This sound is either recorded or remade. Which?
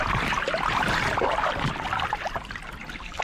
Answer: recorded